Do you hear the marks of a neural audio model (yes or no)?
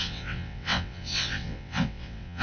yes